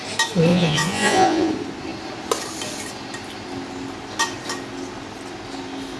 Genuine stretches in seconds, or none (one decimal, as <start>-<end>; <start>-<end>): 0.0-0.5; 1.5-6.0

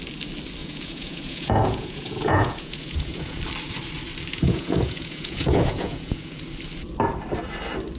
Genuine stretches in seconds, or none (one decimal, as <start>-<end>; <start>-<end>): 0.0-0.6; 3.4-4.3; 6.4-8.0